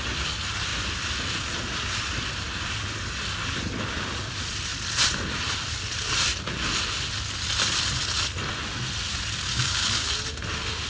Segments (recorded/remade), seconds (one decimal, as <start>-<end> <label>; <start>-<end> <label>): 0.0-9.5 recorded; 9.5-10.1 remade; 10.1-10.9 recorded

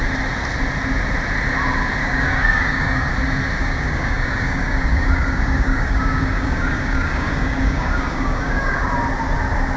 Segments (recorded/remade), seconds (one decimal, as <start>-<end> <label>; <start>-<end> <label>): 0.0-2.0 recorded; 2.0-3.1 remade; 3.1-3.6 recorded; 3.6-8.8 remade; 8.8-9.8 recorded